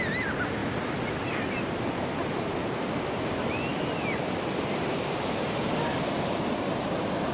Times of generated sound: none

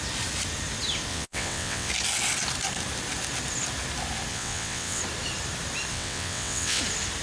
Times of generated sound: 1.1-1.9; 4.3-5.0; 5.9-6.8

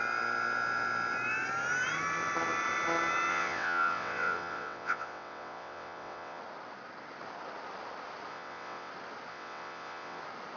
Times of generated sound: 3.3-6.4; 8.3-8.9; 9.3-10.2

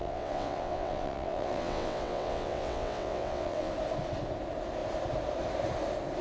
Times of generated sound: 0.0-3.7

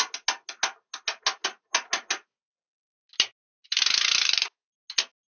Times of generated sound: none

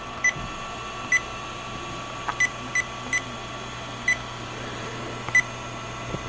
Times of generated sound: none

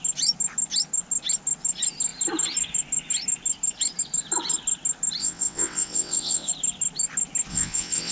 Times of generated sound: 5.2-6.5; 7.5-8.1

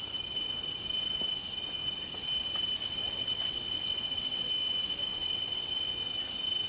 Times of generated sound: 2.8-4.5; 5.1-5.7